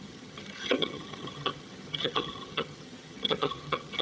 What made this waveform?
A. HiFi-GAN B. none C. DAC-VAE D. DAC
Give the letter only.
A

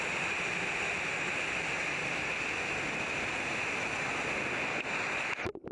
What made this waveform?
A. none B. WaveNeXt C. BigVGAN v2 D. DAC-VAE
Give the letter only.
A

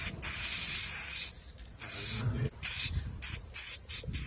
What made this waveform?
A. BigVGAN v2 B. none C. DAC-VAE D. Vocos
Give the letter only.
B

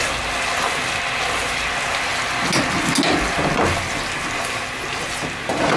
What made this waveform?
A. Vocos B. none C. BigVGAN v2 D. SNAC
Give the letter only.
B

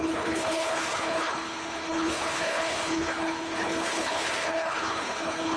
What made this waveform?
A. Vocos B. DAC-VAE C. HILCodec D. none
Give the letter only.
C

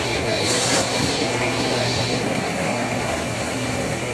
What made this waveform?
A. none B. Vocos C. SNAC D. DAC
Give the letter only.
C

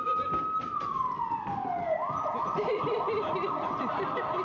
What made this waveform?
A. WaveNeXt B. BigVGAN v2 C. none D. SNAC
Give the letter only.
C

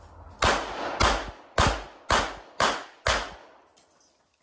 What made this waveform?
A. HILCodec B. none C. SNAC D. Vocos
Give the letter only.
B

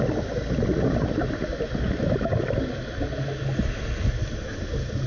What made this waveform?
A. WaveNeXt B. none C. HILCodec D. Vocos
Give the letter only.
B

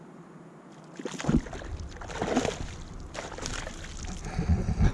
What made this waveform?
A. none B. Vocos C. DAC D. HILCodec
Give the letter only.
A